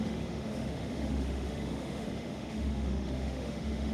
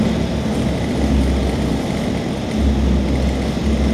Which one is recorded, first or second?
second